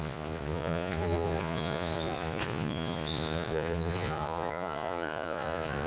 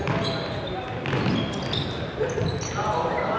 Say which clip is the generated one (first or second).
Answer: first